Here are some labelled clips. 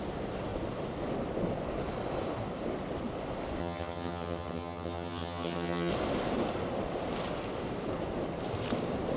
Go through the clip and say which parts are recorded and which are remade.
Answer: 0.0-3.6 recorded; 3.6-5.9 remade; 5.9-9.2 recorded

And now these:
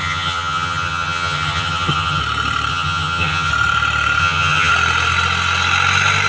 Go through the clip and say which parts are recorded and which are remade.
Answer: 0.0-2.2 remade; 2.2-2.7 recorded; 2.7-3.5 remade; 3.5-4.2 recorded; 4.2-4.7 remade; 4.7-6.3 recorded

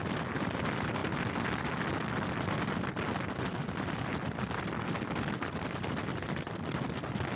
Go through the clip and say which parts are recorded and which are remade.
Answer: 0.0-7.4 recorded

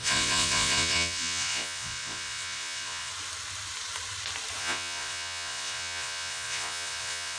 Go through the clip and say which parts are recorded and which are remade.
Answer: 0.0-3.1 remade; 3.1-4.6 recorded; 4.6-7.4 remade

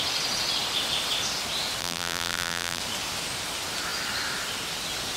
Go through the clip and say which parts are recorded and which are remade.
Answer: 0.0-1.8 recorded; 1.8-2.8 remade; 2.8-5.2 recorded

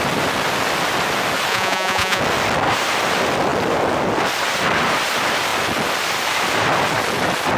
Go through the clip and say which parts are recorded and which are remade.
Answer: 0.0-1.5 recorded; 1.5-2.2 remade; 2.2-7.6 recorded